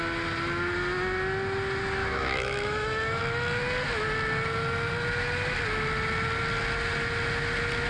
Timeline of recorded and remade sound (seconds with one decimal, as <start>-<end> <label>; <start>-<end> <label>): 0.0-2.0 recorded; 2.0-3.2 remade; 3.2-7.9 recorded